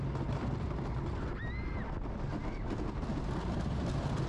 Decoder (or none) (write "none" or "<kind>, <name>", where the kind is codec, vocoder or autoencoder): none